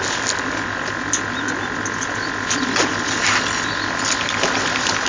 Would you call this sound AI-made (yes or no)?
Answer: no